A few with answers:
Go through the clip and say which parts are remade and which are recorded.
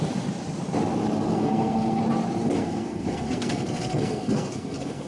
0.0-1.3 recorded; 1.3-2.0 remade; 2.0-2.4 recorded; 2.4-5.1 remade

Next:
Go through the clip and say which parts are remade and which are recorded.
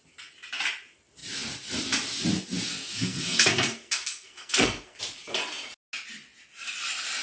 0.0-2.7 recorded; 2.7-5.0 remade; 5.0-7.2 recorded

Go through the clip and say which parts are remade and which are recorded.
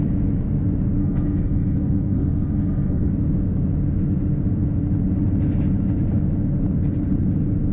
0.0-1.0 recorded; 1.0-3.1 remade; 3.1-7.7 recorded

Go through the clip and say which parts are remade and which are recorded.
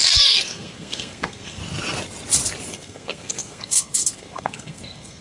0.0-1.6 remade; 1.6-2.7 recorded; 2.7-5.2 remade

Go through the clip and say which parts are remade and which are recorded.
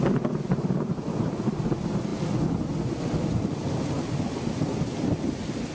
0.0-5.7 recorded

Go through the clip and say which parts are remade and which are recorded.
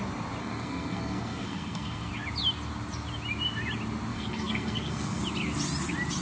0.0-0.4 recorded; 0.4-2.1 remade; 2.1-4.1 recorded; 4.1-5.2 remade; 5.2-6.2 recorded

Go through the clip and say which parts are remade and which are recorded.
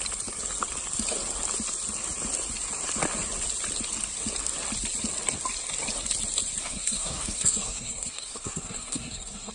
0.0-6.6 recorded; 6.6-9.5 remade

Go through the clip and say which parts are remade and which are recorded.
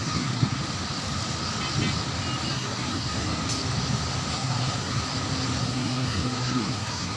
0.0-0.6 remade; 0.6-2.5 recorded; 2.5-3.4 remade; 3.4-4.3 recorded; 4.3-5.0 remade; 5.0-5.6 recorded; 5.6-7.2 remade